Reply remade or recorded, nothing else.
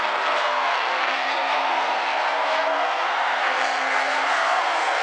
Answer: remade